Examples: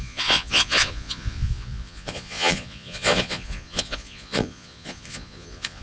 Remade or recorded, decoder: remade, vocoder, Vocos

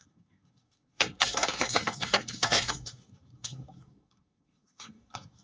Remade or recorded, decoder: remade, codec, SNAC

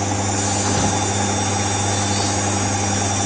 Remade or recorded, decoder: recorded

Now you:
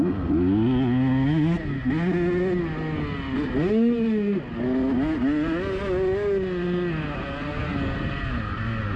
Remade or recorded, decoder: recorded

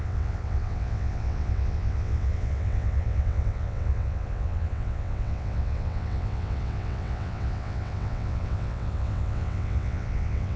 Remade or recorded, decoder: remade, vocoder, WaveNeXt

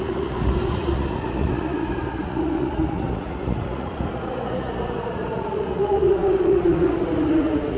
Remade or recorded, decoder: remade, vocoder, Vocos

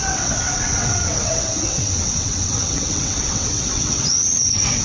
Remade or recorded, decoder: remade, vocoder, WaveNeXt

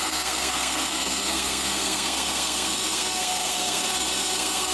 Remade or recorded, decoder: remade, codec, SNAC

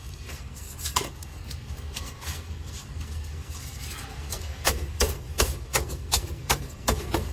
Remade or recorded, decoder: remade, codec, SNAC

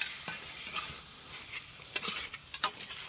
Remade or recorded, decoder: recorded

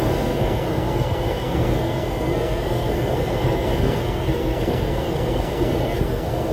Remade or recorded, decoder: remade, codec, SNAC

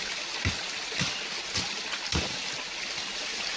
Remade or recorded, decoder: recorded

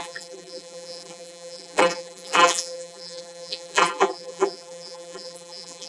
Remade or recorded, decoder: remade, vocoder, BigVGAN v2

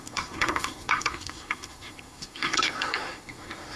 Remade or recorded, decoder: remade, codec, SNAC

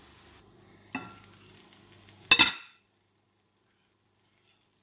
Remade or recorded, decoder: recorded